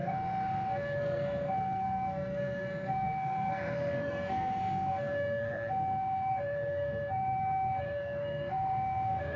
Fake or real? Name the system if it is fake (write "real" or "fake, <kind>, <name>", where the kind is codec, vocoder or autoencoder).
fake, codec, SNAC